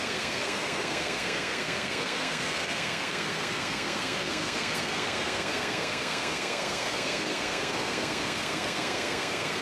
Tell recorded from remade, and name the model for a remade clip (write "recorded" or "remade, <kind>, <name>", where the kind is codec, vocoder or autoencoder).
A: remade, codec, SNAC